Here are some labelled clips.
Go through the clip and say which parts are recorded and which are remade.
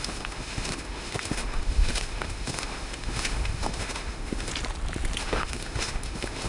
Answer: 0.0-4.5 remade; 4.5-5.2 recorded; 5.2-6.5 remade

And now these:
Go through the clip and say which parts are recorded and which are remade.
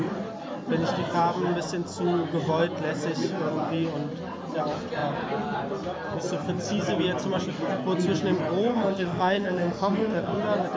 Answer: 0.0-8.7 recorded; 8.7-10.4 remade; 10.4-10.8 recorded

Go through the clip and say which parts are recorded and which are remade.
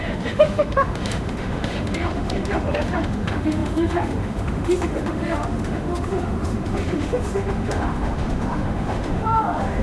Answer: 0.0-9.8 remade